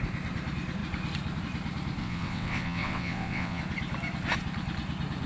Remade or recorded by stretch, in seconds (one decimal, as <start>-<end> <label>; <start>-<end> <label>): 0.0-2.0 recorded; 2.0-3.6 remade; 3.6-5.3 recorded